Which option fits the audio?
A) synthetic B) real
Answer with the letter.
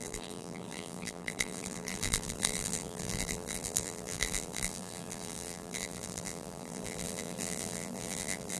A